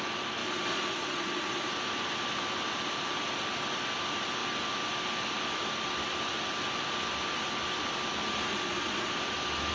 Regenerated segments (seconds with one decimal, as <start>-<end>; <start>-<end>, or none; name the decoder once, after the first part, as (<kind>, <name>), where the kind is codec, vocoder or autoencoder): 0.4-1.7 (vocoder, Vocos); 8.5-9.1